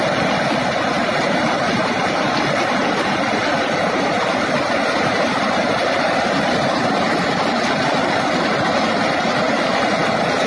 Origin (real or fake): real